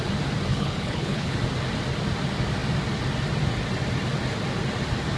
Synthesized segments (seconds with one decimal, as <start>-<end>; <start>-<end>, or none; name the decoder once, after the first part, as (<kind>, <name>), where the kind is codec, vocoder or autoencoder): 0.5-1.4 (codec, HILCodec)